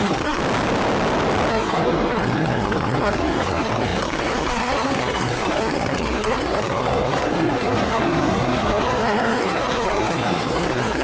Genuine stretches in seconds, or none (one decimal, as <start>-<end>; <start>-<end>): 0.4-1.5